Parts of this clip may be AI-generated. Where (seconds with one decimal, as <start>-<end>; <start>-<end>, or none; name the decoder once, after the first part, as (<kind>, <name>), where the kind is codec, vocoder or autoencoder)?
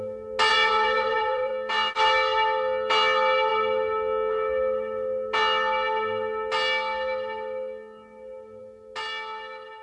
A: 0.5-1.5 (vocoder, Vocos)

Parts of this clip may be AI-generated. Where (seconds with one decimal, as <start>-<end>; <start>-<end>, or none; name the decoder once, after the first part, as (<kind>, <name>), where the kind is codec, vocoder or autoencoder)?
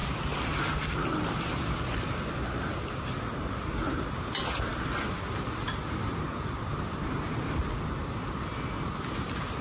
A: none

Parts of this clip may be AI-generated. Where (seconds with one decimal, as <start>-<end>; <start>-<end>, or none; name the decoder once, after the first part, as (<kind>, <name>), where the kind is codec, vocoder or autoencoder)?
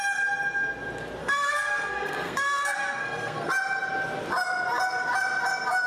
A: 1.2-3.5 (codec, SNAC)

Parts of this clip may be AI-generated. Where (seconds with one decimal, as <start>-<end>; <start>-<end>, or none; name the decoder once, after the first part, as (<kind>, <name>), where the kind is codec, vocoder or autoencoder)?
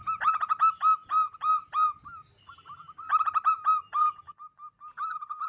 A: 0.0-0.5 (vocoder, BigVGAN v2)